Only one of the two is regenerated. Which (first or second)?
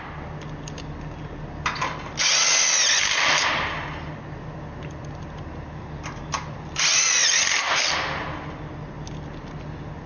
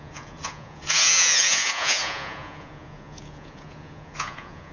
second